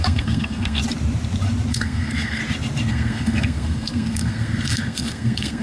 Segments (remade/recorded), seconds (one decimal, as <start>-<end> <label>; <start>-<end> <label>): 0.0-0.8 remade; 0.8-1.7 recorded; 1.7-2.4 remade; 2.4-2.9 recorded; 2.9-5.6 remade